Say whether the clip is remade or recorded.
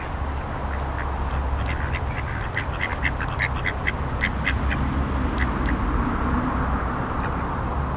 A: recorded